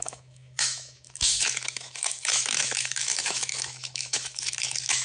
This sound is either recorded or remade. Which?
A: remade